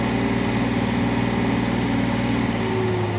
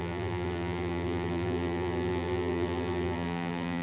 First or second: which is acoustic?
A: first